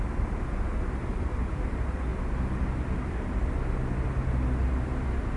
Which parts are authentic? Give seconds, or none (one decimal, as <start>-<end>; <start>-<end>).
0.0-5.4